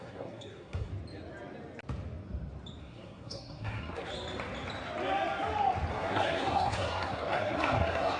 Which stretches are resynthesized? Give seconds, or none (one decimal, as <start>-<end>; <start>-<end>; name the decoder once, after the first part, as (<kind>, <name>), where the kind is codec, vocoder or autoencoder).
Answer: 0.0-0.9 (codec, SNAC); 2.8-4.1; 5.9-8.2